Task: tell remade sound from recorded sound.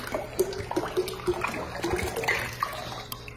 recorded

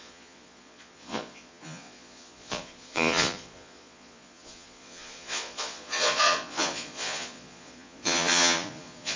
remade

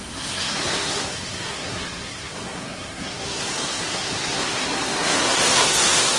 remade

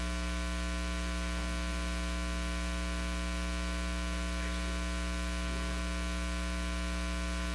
recorded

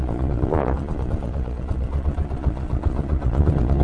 remade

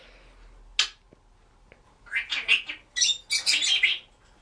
recorded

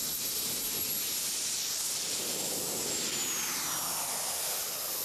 recorded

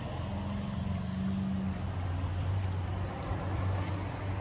recorded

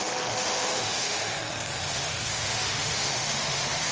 remade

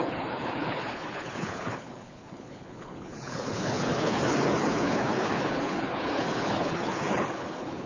remade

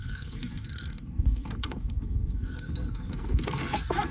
remade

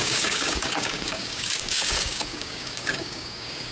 remade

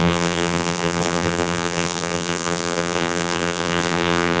remade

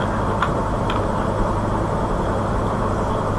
recorded